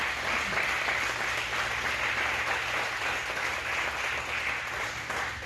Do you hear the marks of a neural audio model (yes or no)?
no